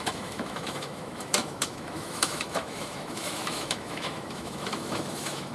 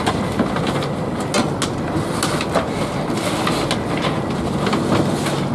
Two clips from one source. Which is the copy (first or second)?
first